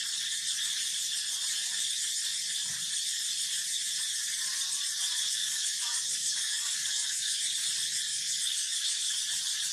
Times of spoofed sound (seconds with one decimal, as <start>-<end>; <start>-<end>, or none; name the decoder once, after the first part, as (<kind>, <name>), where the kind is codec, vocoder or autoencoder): 5.4-7.4 (codec, DAC); 8.1-9.1